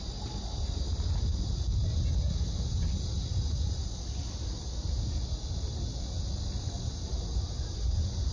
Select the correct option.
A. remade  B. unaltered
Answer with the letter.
B